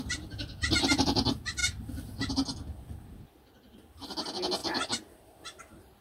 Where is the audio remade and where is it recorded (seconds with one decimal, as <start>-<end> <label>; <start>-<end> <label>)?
0.0-1.6 recorded; 1.6-2.3 remade; 2.3-4.6 recorded; 4.6-5.6 remade; 5.6-6.0 recorded